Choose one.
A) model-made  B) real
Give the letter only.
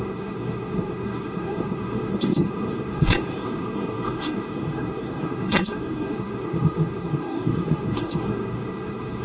A